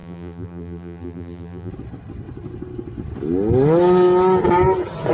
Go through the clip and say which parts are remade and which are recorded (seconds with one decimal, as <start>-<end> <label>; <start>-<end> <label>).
0.0-1.7 remade; 1.7-5.1 recorded